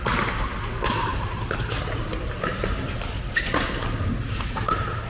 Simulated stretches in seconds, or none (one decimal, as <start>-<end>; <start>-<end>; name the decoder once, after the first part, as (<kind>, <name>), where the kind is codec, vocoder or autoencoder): none